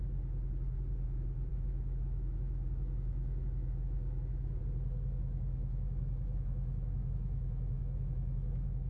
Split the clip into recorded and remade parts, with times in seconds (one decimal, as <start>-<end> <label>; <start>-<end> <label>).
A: 0.0-1.5 recorded; 1.5-4.6 remade; 4.6-5.5 recorded; 5.5-8.9 remade